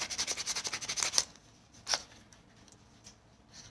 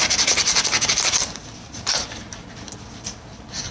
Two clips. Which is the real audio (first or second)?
first